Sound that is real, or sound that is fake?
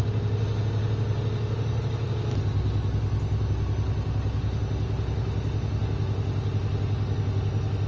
real